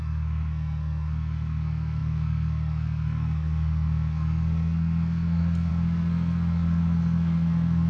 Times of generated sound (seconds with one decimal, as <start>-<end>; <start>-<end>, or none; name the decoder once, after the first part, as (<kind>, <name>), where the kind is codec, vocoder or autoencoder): 0.0-7.9 (codec, SNAC)